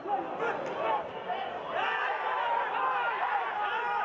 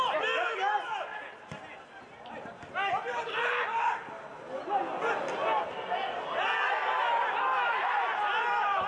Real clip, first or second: second